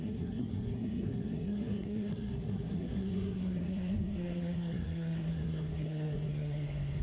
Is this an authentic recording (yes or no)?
no